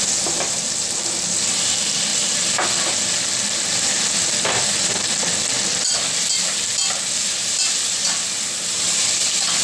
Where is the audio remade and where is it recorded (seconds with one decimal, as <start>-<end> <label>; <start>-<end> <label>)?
0.0-9.6 recorded